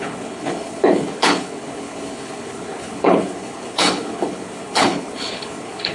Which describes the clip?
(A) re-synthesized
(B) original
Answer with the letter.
A